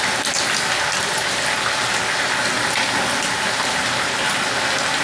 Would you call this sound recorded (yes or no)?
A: yes